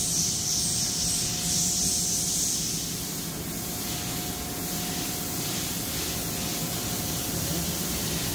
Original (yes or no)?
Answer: yes